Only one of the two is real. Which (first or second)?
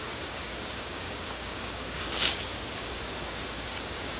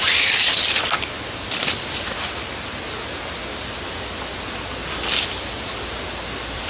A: second